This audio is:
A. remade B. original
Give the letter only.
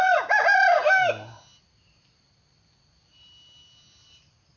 B